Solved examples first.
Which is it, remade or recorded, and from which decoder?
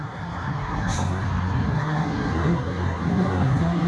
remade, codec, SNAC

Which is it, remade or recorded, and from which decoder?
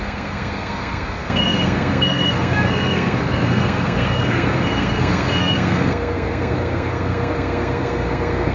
remade, codec, SNAC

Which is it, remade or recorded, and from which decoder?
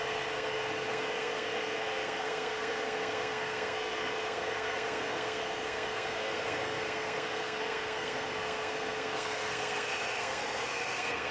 remade, codec, SNAC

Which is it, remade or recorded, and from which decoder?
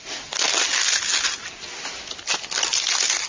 recorded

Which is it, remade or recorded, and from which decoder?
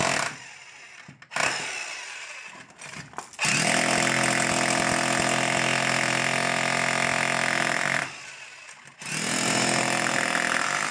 recorded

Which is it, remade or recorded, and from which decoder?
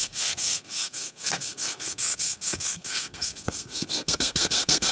remade, codec, SNAC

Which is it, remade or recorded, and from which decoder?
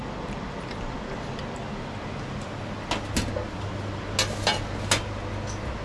recorded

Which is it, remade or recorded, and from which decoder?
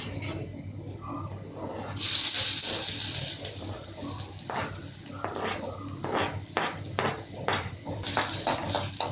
recorded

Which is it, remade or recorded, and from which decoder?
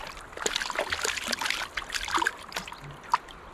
recorded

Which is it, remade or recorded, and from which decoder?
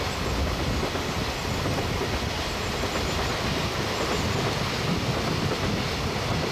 recorded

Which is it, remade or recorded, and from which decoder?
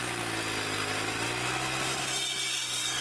recorded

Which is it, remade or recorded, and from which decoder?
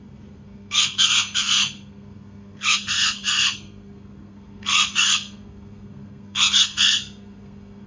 remade, codec, SNAC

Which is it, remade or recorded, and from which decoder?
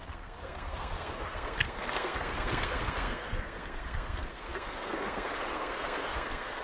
remade, codec, SNAC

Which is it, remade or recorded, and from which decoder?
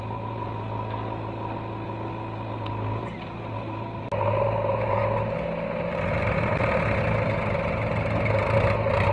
recorded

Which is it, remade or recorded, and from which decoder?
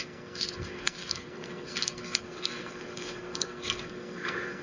remade, codec, SNAC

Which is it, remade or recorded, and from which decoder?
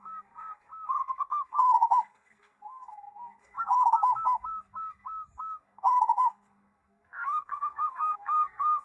remade, codec, SNAC